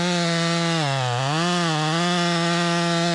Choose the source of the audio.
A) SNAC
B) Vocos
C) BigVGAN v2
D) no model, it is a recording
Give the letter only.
D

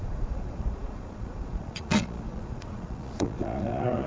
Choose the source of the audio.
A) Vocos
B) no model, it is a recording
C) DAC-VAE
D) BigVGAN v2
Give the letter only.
A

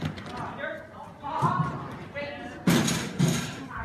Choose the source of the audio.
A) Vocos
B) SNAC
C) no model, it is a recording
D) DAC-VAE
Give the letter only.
C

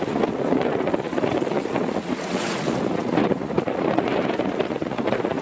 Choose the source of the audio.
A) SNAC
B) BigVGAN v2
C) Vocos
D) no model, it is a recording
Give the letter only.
C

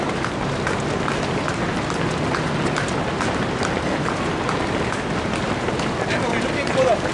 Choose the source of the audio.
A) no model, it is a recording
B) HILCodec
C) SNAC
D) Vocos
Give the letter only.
A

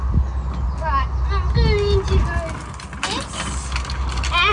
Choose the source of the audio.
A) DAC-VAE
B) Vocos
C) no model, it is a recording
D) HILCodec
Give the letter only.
C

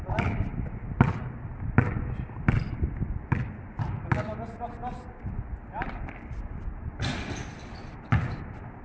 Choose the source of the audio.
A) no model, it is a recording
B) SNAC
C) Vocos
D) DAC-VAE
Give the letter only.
A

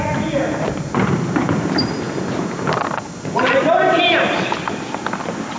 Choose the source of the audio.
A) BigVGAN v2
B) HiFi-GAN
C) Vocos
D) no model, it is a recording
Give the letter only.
D